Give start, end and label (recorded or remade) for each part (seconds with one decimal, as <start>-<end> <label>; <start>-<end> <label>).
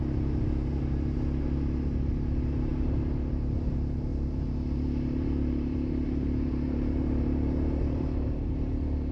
0.0-4.1 recorded; 4.1-8.5 remade; 8.5-9.1 recorded